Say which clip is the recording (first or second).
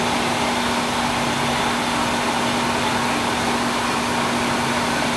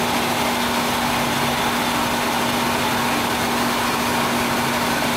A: second